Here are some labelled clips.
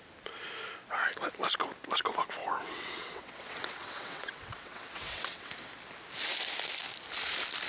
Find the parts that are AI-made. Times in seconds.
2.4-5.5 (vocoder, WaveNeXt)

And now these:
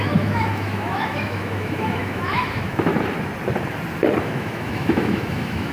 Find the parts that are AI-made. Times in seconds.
0.0-2.9 (autoencoder, DAC-VAE); 4.2-5.7

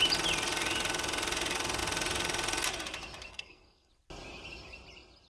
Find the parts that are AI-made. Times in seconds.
3.3-3.9 (codec, SNAC)

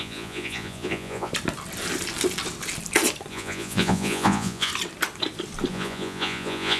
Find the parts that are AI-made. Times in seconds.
0.0-1.3 (vocoder, Vocos); 3.3-4.7; 5.7-6.8

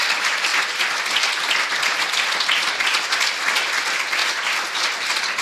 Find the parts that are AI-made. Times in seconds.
none

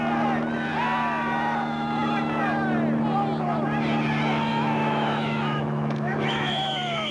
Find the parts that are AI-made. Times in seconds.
4.5-7.1 (autoencoder, DAC-VAE)